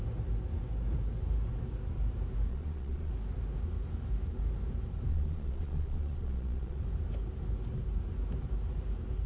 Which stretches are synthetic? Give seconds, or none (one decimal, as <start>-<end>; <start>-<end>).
2.5-3.1; 5.1-6.8